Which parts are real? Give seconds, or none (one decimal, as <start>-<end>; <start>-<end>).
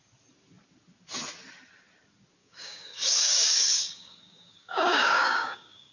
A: 0.0-2.4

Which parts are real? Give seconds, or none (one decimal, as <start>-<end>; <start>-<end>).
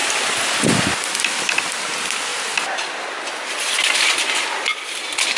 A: 0.0-5.4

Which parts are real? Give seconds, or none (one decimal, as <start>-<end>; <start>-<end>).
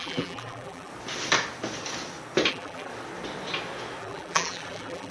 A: 0.9-2.5; 2.9-4.0